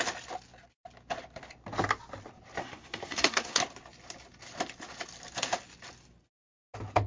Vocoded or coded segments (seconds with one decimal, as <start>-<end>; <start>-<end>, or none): 2.6-3.6